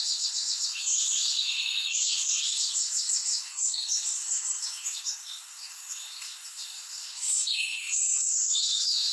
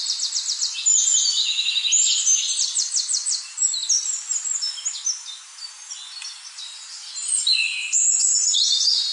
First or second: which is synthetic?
first